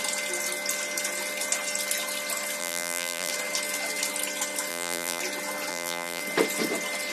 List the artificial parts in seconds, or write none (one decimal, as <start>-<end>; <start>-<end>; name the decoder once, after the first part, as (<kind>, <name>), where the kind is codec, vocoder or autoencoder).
2.6-3.3 (vocoder, BigVGAN v2); 4.7-5.2; 5.7-6.2